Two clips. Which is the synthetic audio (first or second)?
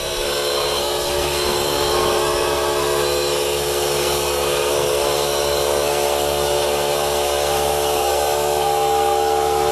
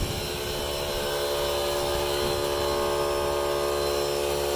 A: first